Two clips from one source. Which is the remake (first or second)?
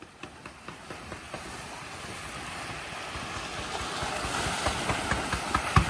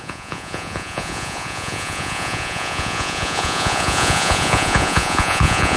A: second